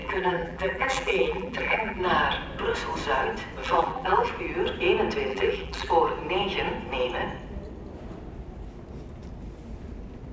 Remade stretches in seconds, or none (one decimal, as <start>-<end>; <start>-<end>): 0.0-2.0; 3.6-4.3; 5.3-5.9